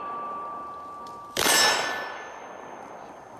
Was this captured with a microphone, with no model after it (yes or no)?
no